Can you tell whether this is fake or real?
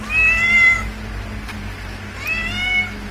real